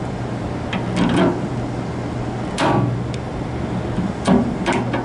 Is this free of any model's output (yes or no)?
yes